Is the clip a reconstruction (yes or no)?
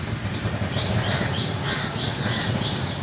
no